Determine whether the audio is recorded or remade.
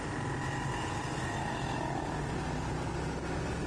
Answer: recorded